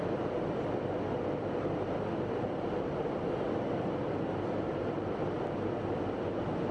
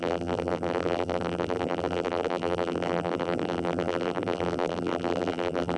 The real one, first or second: first